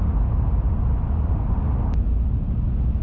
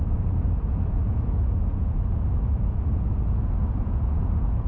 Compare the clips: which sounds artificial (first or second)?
second